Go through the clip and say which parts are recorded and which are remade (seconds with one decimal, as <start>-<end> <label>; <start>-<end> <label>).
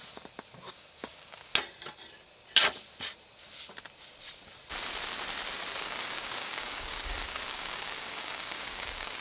0.0-0.7 recorded; 0.7-1.5 remade; 1.5-5.8 recorded; 5.8-9.2 remade